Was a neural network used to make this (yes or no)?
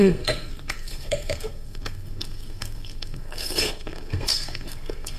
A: yes